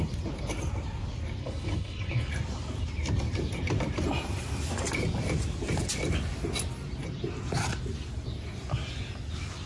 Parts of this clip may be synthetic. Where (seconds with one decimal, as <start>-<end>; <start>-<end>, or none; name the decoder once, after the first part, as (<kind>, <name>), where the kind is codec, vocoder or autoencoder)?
1.4-2.3 (codec, HILCodec)